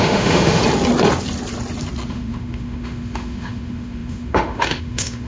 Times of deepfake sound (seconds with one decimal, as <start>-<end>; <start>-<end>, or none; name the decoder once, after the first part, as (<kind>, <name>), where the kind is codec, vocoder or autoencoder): 0.0-0.6 (autoencoder, DAC-VAE); 2.1-5.3